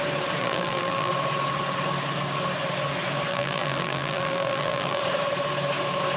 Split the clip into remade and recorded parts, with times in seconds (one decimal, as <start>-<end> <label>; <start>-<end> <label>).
0.0-0.4 recorded; 0.4-1.1 remade; 1.1-3.3 recorded; 3.3-5.0 remade; 5.0-6.2 recorded